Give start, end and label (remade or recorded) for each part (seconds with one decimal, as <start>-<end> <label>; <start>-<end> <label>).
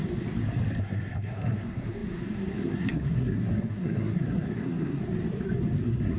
0.0-0.8 recorded; 0.8-5.0 remade; 5.0-5.8 recorded; 5.8-6.2 remade